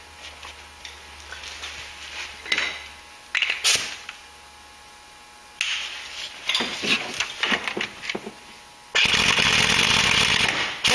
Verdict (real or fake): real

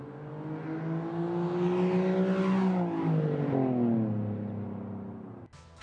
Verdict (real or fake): real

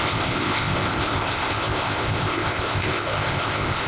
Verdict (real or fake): fake